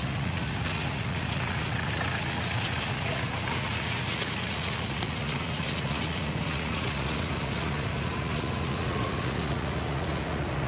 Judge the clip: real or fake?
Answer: fake